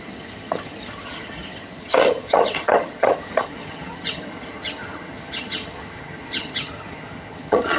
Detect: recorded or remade remade